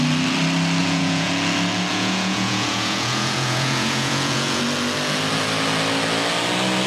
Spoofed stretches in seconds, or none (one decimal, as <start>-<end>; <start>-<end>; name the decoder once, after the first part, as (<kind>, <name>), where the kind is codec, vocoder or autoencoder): 0.8-1.3 (vocoder, Vocos); 1.9-4.6